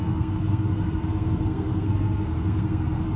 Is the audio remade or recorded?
remade